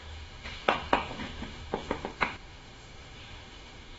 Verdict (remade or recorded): remade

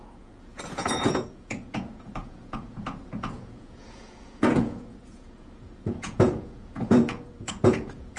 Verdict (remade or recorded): remade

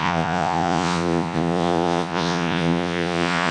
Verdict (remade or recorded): remade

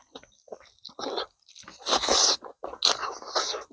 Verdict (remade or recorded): recorded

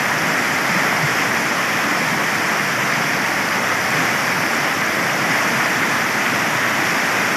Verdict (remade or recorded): recorded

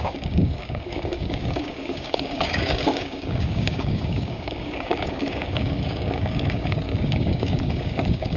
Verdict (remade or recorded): remade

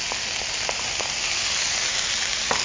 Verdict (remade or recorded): recorded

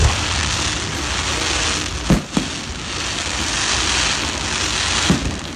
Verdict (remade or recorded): recorded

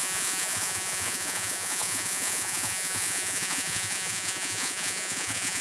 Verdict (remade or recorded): remade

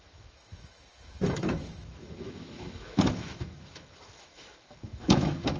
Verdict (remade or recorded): remade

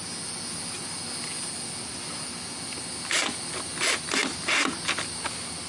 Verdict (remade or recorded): recorded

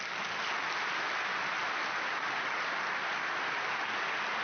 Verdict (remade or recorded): recorded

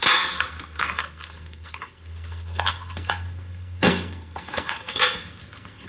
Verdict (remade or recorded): remade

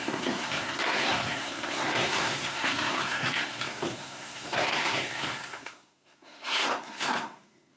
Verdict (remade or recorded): remade